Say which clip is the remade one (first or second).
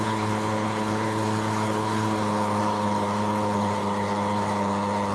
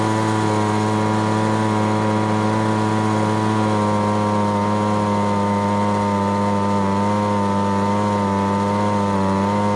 first